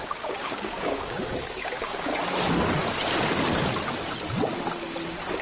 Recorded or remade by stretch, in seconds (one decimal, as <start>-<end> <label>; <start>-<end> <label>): 0.0-2.1 remade; 2.1-5.4 recorded